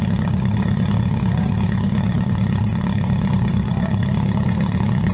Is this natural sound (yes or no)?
no